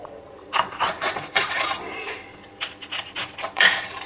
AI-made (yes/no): yes